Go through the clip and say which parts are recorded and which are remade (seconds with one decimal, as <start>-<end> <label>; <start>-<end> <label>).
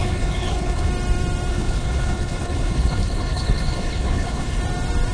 0.0-0.9 remade; 0.9-1.5 recorded; 1.5-4.6 remade; 4.6-5.1 recorded